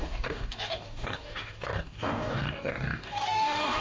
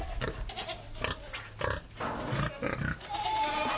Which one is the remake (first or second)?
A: first